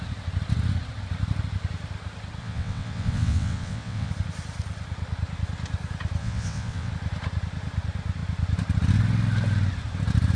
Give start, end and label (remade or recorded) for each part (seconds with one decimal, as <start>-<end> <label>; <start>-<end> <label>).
0.0-2.4 recorded; 2.4-4.1 remade; 4.1-6.2 recorded; 6.2-6.9 remade; 6.9-10.4 recorded